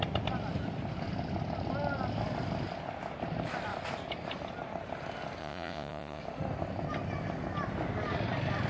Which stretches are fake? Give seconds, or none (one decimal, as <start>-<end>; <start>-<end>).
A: 5.4-6.2